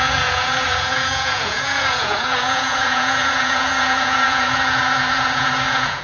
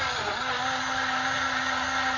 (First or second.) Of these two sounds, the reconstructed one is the first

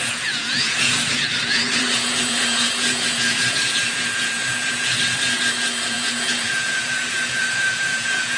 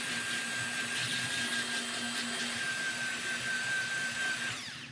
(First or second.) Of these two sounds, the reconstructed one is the first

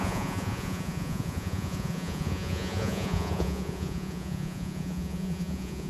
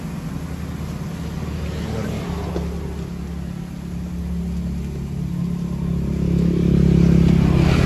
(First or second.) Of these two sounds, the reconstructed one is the first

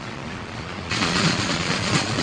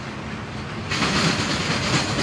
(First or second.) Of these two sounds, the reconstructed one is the first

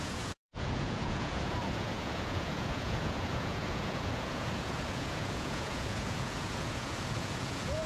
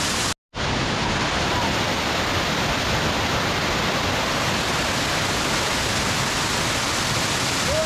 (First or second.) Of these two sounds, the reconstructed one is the first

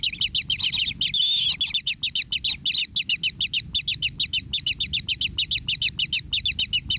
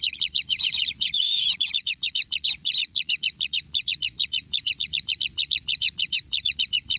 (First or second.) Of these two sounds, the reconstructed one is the second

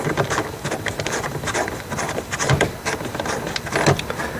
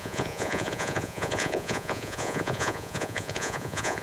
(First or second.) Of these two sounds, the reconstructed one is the second